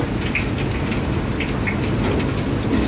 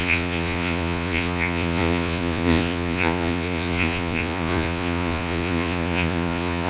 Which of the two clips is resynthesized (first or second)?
second